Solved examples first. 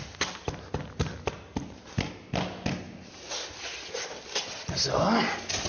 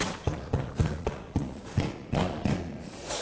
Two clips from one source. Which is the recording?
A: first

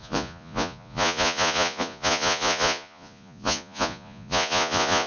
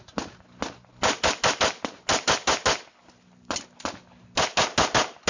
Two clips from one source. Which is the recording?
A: second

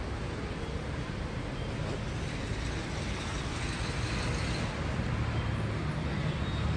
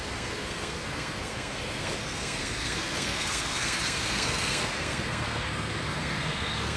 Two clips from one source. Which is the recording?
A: first